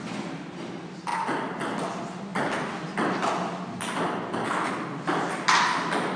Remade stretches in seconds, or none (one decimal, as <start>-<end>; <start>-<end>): none